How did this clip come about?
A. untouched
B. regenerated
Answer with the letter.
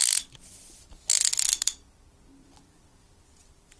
A